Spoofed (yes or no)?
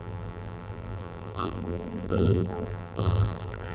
yes